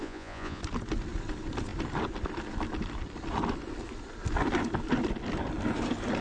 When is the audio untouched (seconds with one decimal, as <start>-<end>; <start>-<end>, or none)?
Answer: 0.6-6.2